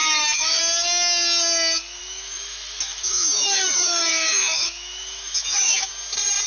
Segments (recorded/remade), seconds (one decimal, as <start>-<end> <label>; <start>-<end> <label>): 0.0-0.6 remade; 0.6-2.0 recorded; 2.0-5.9 remade; 5.9-6.5 recorded